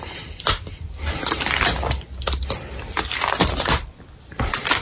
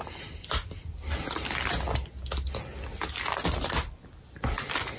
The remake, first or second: first